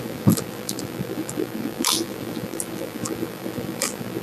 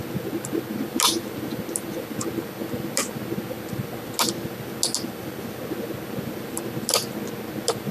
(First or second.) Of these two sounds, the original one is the second